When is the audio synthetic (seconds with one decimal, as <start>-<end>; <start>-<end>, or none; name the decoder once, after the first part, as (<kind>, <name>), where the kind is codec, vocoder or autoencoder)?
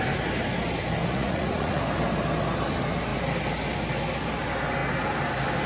1.0-1.8 (vocoder, Vocos)